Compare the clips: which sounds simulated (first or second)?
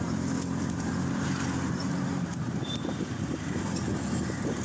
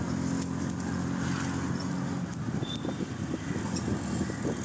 first